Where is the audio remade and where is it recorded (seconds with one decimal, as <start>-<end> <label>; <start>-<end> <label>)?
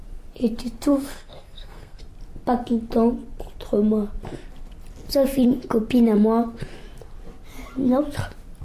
0.0-0.9 recorded; 0.9-2.0 remade; 2.0-8.6 recorded